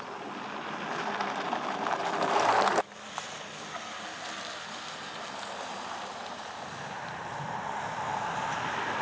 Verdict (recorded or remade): recorded